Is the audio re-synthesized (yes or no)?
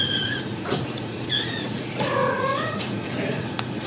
yes